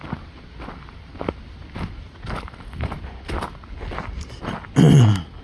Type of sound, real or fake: real